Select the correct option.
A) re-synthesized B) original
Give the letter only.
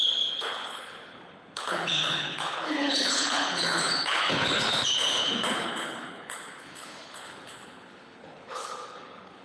A